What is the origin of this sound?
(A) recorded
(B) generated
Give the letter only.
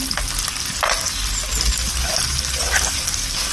A